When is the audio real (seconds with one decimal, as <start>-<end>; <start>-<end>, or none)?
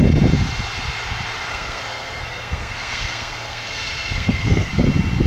0.0-1.5; 4.7-5.3